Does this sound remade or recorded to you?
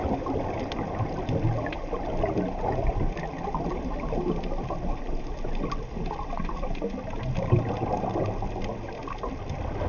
recorded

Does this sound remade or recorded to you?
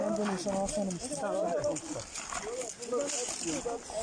recorded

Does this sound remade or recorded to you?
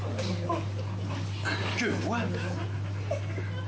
recorded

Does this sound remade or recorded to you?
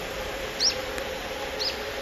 recorded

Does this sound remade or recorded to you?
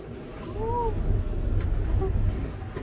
recorded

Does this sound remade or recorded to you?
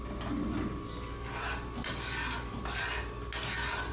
recorded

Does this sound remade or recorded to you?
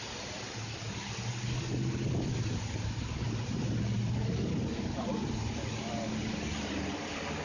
recorded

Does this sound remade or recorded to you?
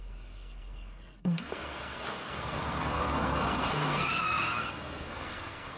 remade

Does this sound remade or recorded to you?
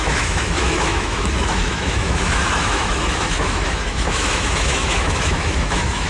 remade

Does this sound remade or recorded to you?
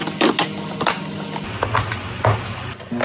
recorded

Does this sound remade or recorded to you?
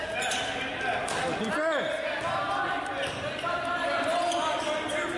recorded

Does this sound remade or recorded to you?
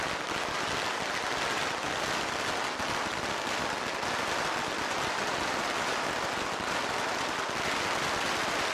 recorded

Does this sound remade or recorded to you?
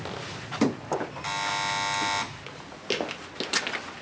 recorded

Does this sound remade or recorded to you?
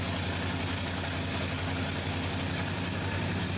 recorded